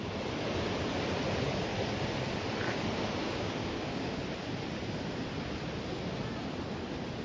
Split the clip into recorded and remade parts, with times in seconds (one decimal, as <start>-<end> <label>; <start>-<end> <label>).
0.0-3.2 recorded; 3.2-4.2 remade; 4.2-7.2 recorded